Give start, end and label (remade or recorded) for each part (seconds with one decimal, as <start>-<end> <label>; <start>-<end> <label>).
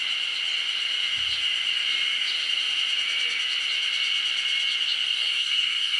0.0-5.2 recorded; 5.2-6.0 remade